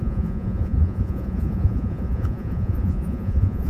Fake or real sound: fake